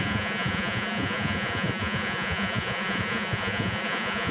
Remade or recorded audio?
remade